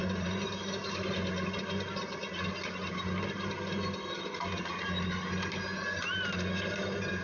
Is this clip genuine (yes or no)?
yes